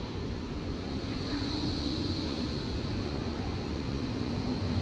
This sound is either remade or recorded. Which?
remade